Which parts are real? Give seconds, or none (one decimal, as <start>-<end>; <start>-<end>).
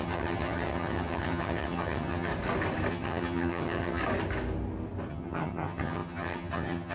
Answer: 2.3-2.9; 4.0-5.1